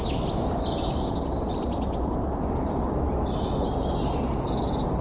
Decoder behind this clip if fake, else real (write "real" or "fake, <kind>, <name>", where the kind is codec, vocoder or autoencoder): real